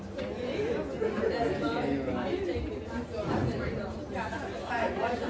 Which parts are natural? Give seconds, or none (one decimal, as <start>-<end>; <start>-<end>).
0.0-5.3